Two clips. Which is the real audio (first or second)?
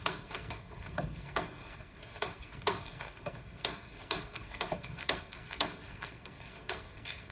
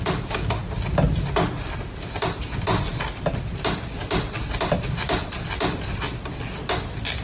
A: second